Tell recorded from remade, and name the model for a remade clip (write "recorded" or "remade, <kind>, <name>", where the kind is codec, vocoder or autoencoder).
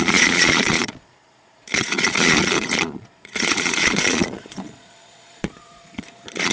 remade, vocoder, Vocos